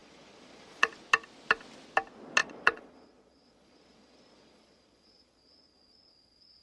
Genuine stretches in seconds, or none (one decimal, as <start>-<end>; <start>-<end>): 0.9-2.4